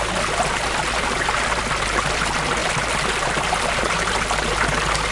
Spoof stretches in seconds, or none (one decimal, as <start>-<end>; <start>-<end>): none